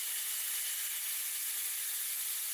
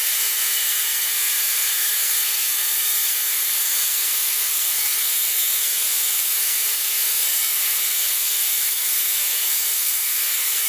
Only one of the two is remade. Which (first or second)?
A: second